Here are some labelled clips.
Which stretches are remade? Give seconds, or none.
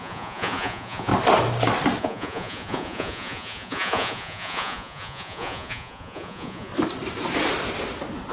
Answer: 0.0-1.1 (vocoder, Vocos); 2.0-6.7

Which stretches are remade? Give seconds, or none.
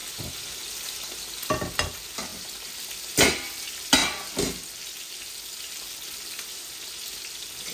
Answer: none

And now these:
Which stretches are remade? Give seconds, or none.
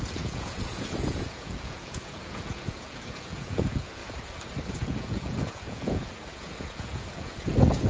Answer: 0.0-4.0 (vocoder, Vocos); 4.8-7.9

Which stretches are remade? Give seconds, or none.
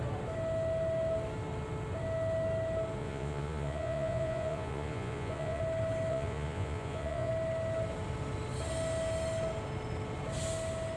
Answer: 3.0-5.6 (vocoder, Vocos); 6.1-7.3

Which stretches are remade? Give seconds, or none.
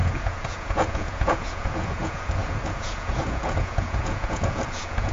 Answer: 0.0-5.1 (vocoder, Vocos)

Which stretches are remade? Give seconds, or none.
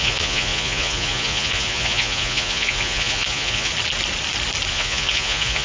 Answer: 0.0-3.7 (vocoder, Vocos); 4.7-5.6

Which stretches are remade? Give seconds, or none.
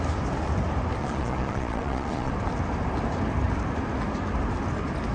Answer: 1.0-2.3 (vocoder, Vocos)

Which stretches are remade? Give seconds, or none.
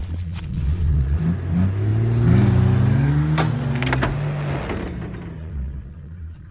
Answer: 0.0-1.2 (vocoder, Vocos); 5.4-6.5